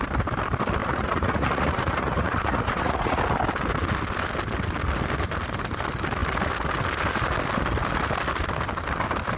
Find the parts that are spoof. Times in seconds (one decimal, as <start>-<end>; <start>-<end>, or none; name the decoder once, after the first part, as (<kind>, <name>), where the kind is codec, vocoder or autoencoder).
0.8-3.2 (vocoder, Vocos)